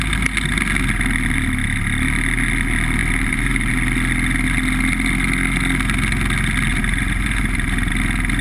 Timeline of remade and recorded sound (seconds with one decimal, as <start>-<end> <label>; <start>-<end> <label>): 0.0-3.0 recorded; 3.0-3.7 remade; 3.7-6.7 recorded; 6.7-7.9 remade; 7.9-8.4 recorded